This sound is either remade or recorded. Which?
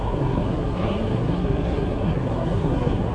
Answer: remade